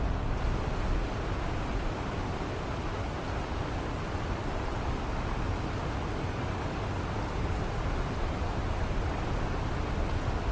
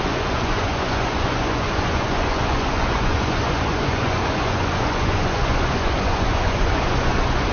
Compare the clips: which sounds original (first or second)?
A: first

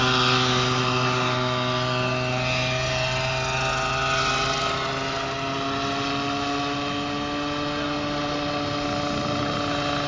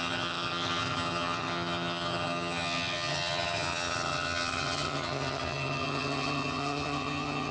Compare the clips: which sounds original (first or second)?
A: first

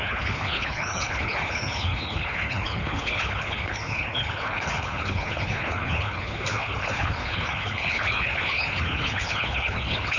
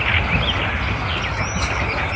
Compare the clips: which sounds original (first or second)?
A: second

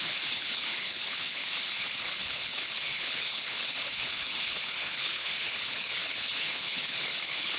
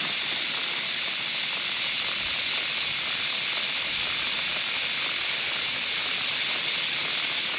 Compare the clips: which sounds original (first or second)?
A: second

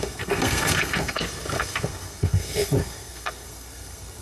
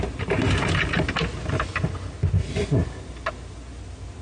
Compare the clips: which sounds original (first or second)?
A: second